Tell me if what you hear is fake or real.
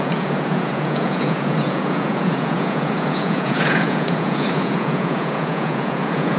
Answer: fake